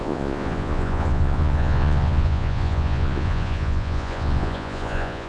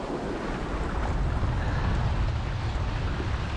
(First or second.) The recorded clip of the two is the second